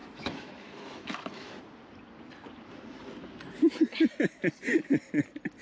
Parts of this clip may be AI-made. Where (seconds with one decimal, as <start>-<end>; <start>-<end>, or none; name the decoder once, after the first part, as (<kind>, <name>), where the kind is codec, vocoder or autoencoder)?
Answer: 0.0-1.6 (autoencoder, DAC-VAE)